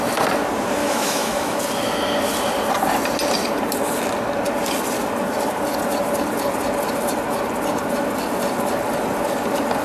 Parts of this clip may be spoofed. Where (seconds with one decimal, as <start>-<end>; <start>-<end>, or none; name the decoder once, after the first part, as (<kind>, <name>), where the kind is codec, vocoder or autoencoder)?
0.8-1.6 (autoencoder, DAC-VAE)